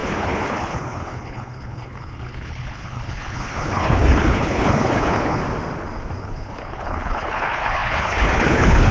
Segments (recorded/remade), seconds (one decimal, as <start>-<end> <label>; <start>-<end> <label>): 0.0-5.4 remade; 5.4-6.2 recorded; 6.2-8.9 remade